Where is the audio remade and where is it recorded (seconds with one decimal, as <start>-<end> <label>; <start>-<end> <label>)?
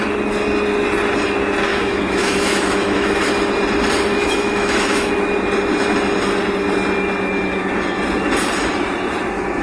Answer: 0.0-1.7 recorded; 1.7-3.3 remade; 3.3-4.1 recorded; 4.1-5.2 remade; 5.2-9.6 recorded